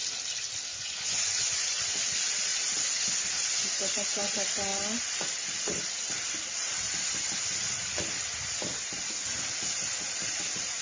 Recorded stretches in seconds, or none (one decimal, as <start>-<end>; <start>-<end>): 0.0-0.7; 1.8-10.8